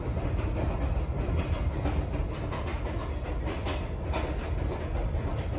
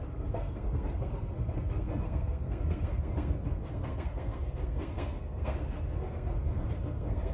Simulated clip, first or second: second